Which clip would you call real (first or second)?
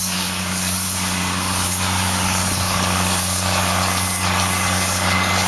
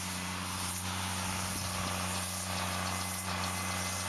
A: second